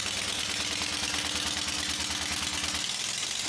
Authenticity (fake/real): real